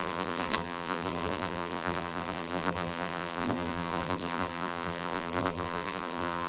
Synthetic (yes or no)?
yes